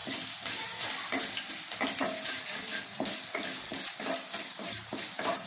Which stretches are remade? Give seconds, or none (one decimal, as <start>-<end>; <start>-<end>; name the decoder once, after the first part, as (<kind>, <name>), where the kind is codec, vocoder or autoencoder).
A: none